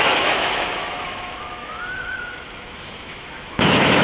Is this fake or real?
fake